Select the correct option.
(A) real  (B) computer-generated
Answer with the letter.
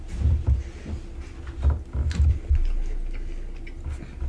A